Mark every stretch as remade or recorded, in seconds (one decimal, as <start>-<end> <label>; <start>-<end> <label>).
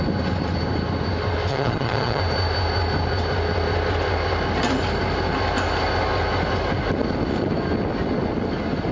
0.0-1.5 recorded; 1.5-2.2 remade; 2.2-8.9 recorded